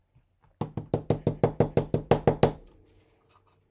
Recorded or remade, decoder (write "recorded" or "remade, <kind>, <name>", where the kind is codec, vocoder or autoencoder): recorded